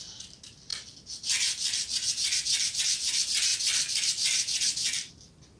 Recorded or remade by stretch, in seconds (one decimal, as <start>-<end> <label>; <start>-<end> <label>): 0.0-5.6 recorded